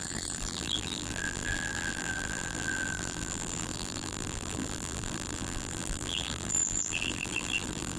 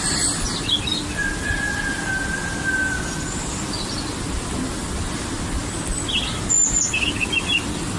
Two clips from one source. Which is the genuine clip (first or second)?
second